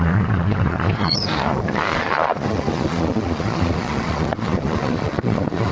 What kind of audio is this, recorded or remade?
remade